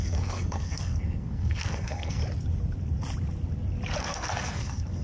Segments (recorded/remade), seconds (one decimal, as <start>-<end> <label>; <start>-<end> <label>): 0.0-2.2 remade; 2.2-4.0 recorded; 4.0-5.0 remade